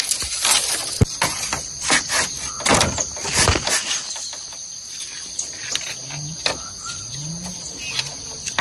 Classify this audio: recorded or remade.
recorded